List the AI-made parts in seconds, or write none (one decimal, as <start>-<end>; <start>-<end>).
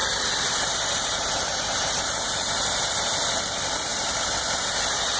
0.0-3.1; 3.9-4.7